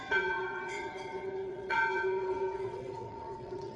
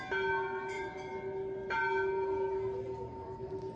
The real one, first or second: second